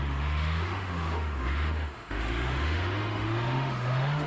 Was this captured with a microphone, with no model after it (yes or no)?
no